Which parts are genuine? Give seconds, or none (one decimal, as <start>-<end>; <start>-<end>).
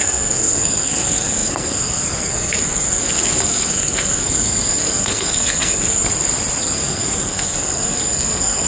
6.1-6.6